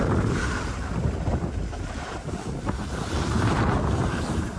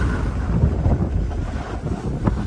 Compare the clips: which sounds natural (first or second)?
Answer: second